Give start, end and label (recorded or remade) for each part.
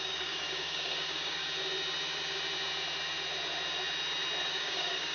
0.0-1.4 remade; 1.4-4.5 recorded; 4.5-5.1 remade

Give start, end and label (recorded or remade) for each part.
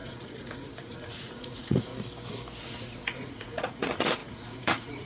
0.0-1.9 remade; 1.9-2.6 recorded; 2.6-5.1 remade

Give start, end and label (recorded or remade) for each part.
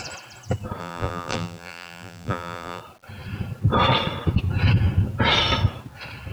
0.0-0.8 recorded; 0.8-2.8 remade; 2.8-6.3 recorded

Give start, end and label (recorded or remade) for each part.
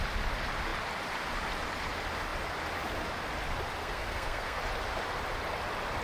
0.0-3.8 recorded; 3.8-4.6 remade; 4.6-6.0 recorded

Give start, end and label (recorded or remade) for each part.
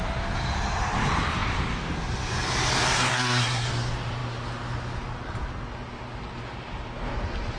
0.0-3.1 recorded; 3.1-3.7 remade; 3.7-7.6 recorded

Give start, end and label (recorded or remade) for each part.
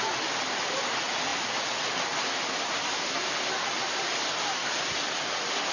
0.0-5.7 recorded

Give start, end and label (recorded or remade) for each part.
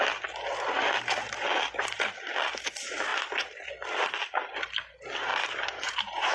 0.0-3.1 recorded; 3.1-3.7 remade; 3.7-5.3 recorded; 5.3-6.3 remade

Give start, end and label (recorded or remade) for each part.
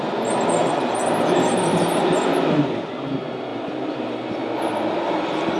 0.0-5.6 recorded